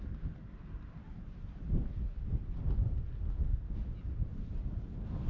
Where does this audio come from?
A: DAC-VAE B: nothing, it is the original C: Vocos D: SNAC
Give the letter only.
B